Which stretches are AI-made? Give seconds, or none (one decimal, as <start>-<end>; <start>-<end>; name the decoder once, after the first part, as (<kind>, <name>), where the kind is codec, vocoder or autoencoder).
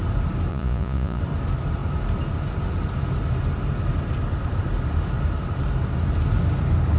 0.5-1.2 (vocoder, Vocos)